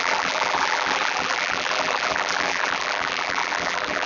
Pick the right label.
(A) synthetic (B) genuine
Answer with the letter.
A